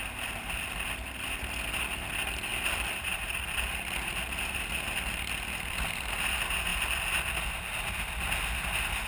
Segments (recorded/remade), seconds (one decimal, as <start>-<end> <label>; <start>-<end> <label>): 0.0-2.5 recorded; 2.5-3.4 remade; 3.4-9.1 recorded